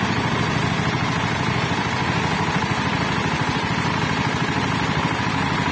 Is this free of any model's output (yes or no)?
yes